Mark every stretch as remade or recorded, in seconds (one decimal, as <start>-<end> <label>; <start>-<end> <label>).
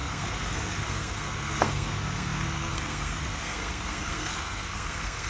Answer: 0.0-5.3 remade